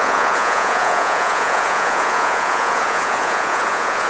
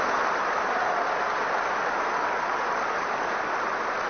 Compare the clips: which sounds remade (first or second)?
first